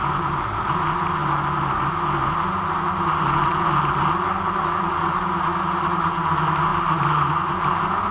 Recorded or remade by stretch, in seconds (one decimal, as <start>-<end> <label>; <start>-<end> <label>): 0.0-8.1 recorded